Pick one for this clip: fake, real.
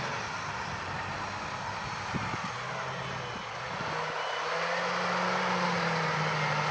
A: real